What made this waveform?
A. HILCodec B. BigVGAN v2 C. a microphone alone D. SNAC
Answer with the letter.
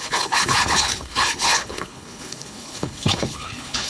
A